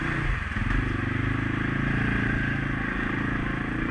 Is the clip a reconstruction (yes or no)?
no